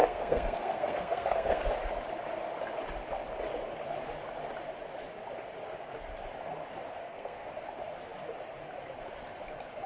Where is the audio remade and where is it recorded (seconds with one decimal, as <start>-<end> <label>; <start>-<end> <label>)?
0.0-1.7 remade; 1.7-7.0 recorded; 7.0-7.5 remade; 7.5-9.9 recorded